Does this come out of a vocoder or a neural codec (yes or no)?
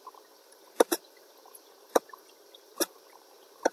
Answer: yes